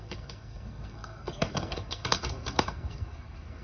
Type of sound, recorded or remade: remade